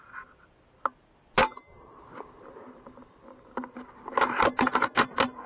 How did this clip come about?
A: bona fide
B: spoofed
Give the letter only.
A